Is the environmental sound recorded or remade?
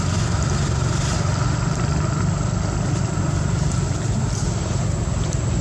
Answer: recorded